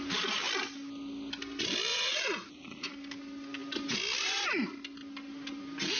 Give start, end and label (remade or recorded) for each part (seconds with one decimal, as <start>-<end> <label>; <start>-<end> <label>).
0.0-1.9 recorded; 1.9-2.9 remade; 2.9-6.0 recorded